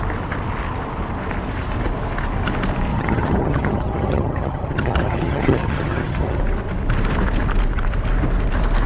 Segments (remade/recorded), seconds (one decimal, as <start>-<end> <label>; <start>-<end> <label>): 0.0-2.9 recorded; 2.9-6.4 remade; 6.4-8.9 recorded